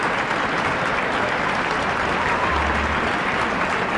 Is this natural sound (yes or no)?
no